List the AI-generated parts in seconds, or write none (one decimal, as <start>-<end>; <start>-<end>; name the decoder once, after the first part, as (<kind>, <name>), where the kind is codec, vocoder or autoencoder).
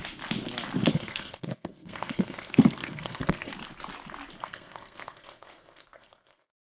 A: 0.9-3.5 (codec, SNAC); 4.4-6.8